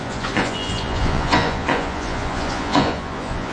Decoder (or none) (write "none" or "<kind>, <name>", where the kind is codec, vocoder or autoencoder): vocoder, Vocos